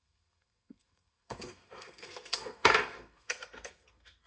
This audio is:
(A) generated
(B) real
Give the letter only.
A